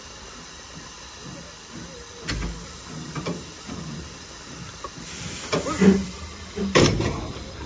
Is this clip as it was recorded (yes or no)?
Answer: no